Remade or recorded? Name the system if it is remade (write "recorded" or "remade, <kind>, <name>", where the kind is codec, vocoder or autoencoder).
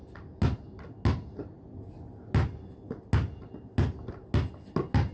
recorded